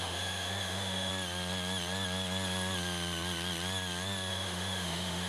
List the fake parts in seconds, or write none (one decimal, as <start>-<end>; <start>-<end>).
0.0-1.1; 4.3-5.3